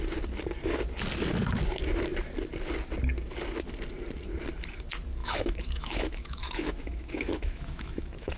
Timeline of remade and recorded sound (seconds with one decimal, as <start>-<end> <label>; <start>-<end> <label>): 0.0-5.2 recorded; 5.2-8.4 remade